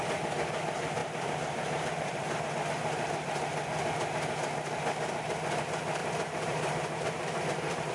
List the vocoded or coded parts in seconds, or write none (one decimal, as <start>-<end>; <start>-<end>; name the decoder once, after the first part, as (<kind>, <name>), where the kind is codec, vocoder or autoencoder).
1.0-2.5 (vocoder, BigVGAN v2); 6.0-7.9